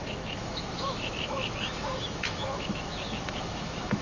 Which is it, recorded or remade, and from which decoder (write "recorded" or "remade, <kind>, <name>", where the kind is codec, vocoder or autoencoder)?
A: remade, autoencoder, DAC-VAE